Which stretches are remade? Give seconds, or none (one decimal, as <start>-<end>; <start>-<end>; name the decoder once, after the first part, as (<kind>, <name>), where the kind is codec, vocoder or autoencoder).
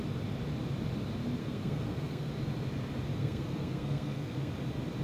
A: 1.4-2.3 (codec, SNAC); 3.2-4.5